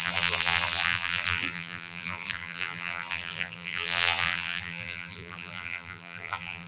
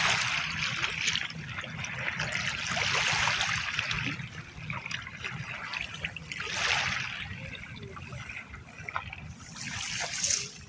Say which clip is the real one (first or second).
second